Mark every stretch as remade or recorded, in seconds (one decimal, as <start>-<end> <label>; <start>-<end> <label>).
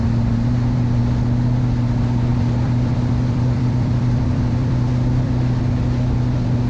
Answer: 0.0-2.3 recorded; 2.3-5.6 remade; 5.6-6.7 recorded